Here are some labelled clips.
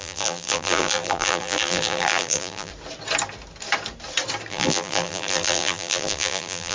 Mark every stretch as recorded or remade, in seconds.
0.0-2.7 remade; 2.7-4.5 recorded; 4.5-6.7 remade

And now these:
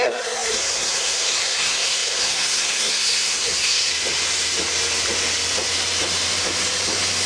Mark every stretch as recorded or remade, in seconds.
0.0-3.9 remade; 3.9-7.3 recorded

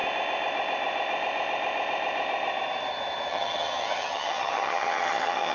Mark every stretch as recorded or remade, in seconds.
0.0-3.3 recorded; 3.3-5.5 remade

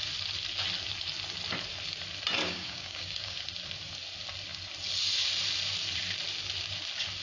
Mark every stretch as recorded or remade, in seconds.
0.0-2.4 recorded; 2.4-3.5 remade; 3.5-7.2 recorded